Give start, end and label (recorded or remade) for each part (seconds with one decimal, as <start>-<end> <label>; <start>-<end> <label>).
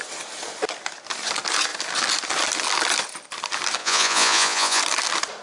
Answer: 0.0-3.8 recorded; 3.8-4.8 remade; 4.8-5.4 recorded